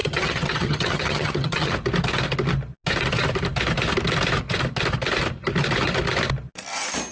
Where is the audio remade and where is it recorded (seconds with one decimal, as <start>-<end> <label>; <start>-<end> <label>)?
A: 0.0-1.7 remade; 1.7-7.1 recorded